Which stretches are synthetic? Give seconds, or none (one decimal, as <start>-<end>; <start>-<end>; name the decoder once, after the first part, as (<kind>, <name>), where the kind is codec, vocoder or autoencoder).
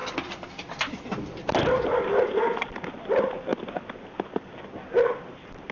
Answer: 3.1-3.5 (vocoder, BigVGAN v2); 5.2-5.7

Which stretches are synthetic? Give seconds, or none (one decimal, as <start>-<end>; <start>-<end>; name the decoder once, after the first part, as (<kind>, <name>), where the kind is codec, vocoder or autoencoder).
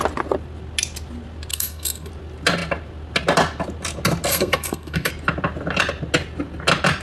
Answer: 1.5-2.1 (codec, SNAC); 4.3-5.1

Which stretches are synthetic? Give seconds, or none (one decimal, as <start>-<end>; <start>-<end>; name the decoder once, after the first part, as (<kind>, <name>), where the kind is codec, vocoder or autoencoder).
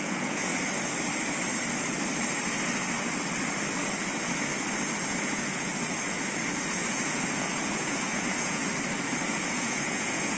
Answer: 0.0-0.5 (vocoder, Vocos); 5.2-5.7; 6.9-8.6; 9.3-10.4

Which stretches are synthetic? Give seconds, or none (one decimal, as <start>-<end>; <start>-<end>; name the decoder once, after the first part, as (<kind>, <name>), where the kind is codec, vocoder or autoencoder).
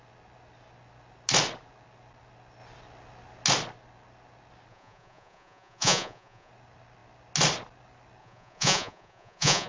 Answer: 4.7-6.5 (vocoder, Vocos); 8.2-9.7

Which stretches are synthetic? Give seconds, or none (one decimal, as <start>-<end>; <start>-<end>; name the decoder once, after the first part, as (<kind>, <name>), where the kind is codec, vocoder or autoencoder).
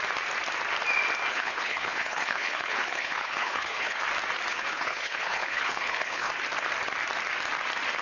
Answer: 1.3-4.0 (codec, HILCodec); 4.5-6.3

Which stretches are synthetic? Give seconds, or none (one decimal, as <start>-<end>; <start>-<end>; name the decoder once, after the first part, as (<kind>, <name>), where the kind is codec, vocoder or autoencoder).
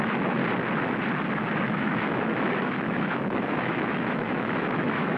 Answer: 0.0-0.4 (autoencoder, DAC-VAE); 1.5-5.2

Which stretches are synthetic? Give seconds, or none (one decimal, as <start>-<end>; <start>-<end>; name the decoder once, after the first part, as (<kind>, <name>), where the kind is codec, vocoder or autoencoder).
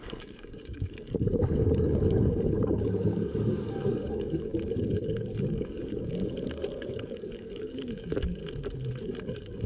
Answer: 0.0-8.4 (codec, DAC); 9.0-9.7